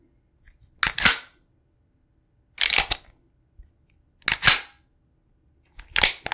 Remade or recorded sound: recorded